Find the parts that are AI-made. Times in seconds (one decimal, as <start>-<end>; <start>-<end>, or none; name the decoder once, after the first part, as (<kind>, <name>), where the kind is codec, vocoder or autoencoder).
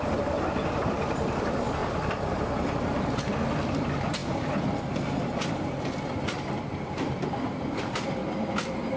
0.0-8.2 (vocoder, BigVGAN v2)